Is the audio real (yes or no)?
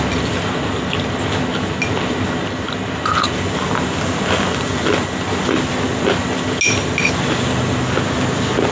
yes